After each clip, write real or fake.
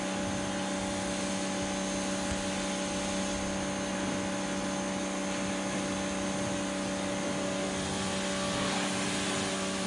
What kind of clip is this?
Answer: real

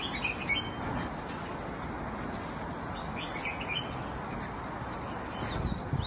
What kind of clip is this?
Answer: real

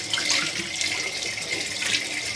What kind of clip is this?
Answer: real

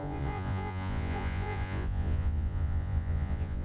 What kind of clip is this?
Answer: fake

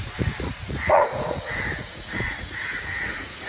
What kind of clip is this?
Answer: fake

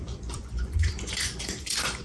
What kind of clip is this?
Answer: fake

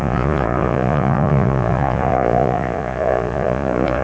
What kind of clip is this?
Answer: fake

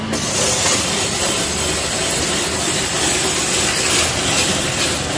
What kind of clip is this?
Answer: real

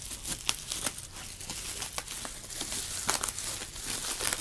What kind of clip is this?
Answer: real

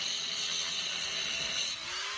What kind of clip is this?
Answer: real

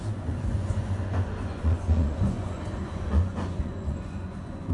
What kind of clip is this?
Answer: fake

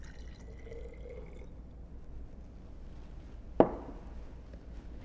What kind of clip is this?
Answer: real